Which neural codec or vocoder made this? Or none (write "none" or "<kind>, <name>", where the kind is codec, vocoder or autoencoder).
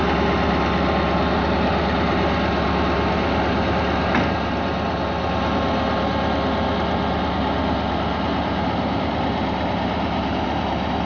none